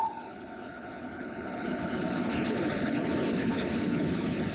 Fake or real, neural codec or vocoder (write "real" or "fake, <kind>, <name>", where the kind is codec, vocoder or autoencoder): fake, codec, HILCodec